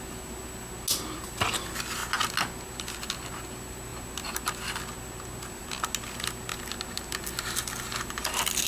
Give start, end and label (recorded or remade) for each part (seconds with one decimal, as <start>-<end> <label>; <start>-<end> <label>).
0.0-8.7 recorded